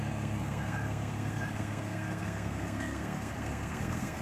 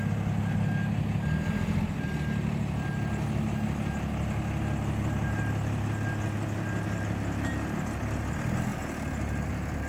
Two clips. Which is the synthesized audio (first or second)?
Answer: first